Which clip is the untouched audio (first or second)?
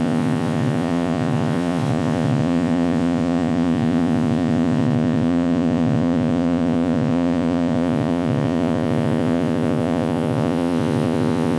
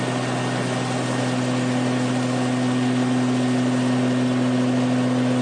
second